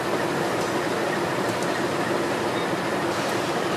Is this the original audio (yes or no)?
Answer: yes